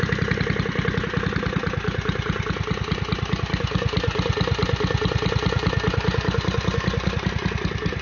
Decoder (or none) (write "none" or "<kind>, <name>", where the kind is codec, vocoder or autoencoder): none